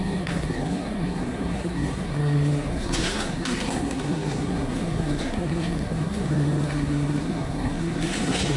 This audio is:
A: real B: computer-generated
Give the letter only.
B